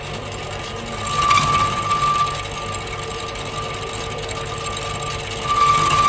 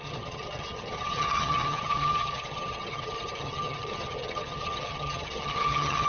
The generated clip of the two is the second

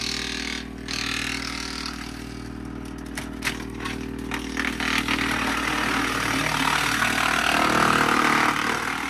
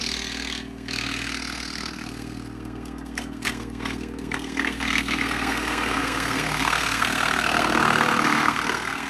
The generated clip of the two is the second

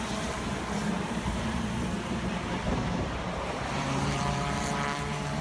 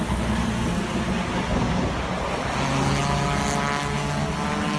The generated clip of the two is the first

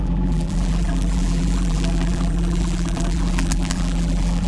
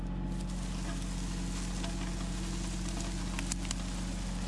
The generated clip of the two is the first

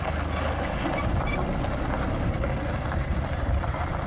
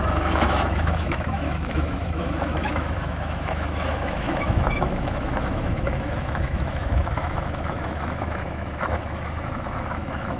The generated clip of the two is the second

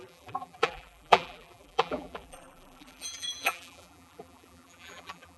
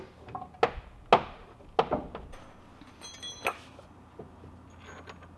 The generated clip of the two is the first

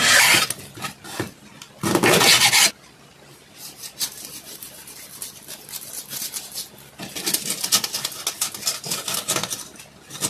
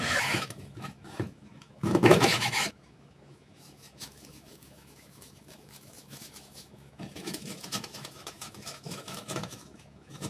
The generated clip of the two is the second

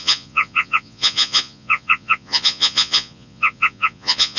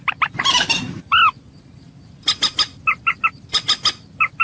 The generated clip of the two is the first